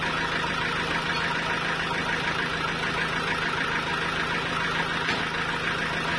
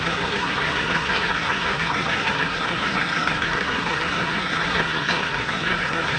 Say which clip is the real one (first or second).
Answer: first